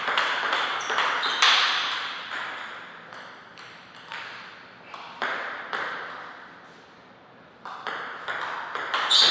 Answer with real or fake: real